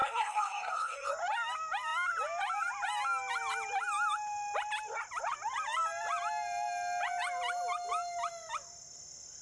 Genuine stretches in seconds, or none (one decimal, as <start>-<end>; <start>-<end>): 1.1-9.4